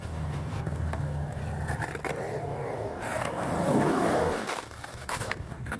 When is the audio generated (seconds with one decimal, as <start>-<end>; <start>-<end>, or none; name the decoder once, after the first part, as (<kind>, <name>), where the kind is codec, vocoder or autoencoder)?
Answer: 0.0-1.4 (codec, DAC); 2.4-5.8

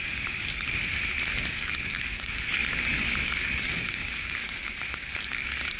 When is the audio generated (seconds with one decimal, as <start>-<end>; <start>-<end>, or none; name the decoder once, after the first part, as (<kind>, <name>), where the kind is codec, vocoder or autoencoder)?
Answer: 0.0-0.8 (codec, DAC); 1.5-5.8

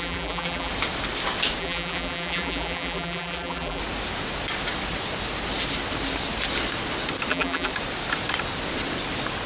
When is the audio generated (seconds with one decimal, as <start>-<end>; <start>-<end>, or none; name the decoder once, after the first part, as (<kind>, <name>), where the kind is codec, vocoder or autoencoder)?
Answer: 0.0-0.7 (vocoder, BigVGAN v2); 1.6-3.8; 7.3-7.7

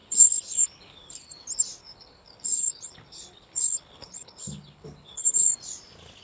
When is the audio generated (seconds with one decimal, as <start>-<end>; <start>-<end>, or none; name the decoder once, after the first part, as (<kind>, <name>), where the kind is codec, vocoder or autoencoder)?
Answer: 0.0-1.1 (codec, HILCodec); 1.8-5.5